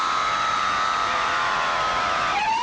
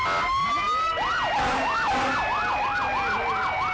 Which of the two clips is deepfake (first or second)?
first